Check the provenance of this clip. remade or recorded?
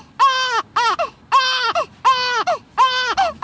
recorded